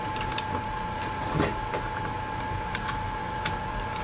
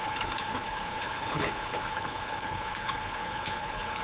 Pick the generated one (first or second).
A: second